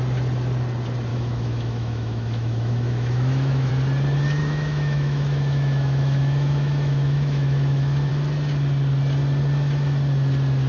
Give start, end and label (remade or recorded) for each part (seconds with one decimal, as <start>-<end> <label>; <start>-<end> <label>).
0.0-1.1 recorded; 1.1-3.7 remade; 3.7-4.4 recorded; 4.4-8.1 remade; 8.1-10.7 recorded